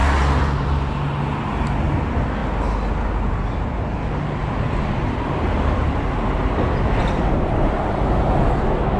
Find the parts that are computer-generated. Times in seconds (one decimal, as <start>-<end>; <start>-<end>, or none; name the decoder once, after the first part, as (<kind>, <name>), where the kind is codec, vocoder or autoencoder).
4.4-6.5 (vocoder, BigVGAN v2)